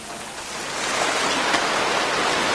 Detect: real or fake real